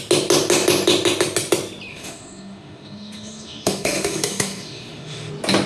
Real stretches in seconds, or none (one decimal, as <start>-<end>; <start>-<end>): 0.0-1.9; 5.3-5.7